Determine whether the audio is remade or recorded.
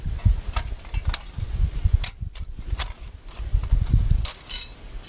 recorded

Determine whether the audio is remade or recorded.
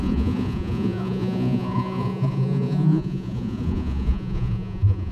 remade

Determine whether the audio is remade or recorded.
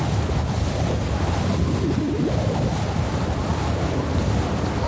recorded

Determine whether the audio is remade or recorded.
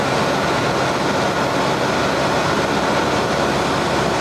recorded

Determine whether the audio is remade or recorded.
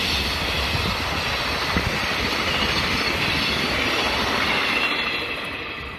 recorded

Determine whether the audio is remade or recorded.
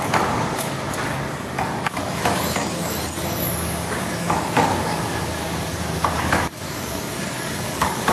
remade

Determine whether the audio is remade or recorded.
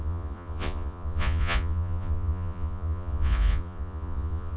remade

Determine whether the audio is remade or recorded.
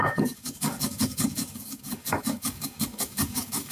remade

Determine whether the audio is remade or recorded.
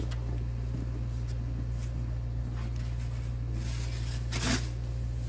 recorded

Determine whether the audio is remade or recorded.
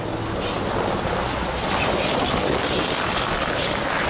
recorded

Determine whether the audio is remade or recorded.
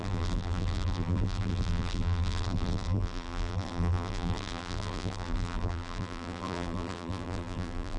remade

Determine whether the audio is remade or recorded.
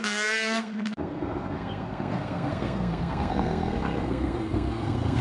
remade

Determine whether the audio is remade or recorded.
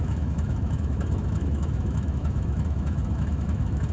remade